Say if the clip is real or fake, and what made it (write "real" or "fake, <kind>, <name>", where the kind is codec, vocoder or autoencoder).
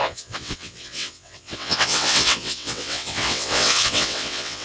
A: fake, vocoder, WaveNeXt